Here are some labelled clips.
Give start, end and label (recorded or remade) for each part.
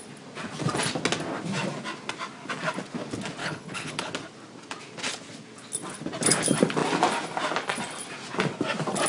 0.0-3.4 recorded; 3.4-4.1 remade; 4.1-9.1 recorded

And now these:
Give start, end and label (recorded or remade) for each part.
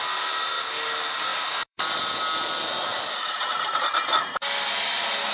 0.0-1.3 recorded; 1.3-2.0 remade; 2.0-5.3 recorded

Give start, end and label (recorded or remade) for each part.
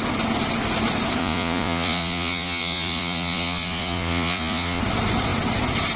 0.0-1.2 recorded; 1.2-4.8 remade; 4.8-6.0 recorded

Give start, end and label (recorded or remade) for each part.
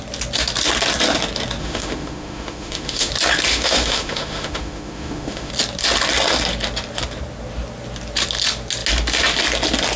0.0-1.6 recorded; 1.6-3.1 remade; 3.1-3.5 recorded; 3.5-5.5 remade; 5.5-10.0 recorded